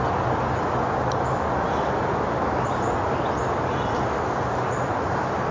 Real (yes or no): yes